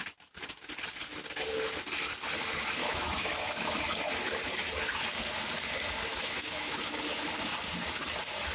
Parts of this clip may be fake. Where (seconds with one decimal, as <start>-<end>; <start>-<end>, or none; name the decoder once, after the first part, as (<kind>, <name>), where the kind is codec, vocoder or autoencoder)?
2.8-3.8 (autoencoder, DAC-VAE); 6.1-7.0